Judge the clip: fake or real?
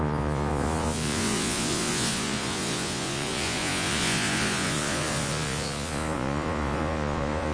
fake